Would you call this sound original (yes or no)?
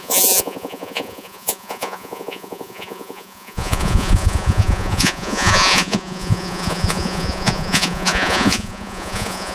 no